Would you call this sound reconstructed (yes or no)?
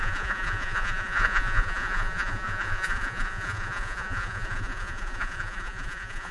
yes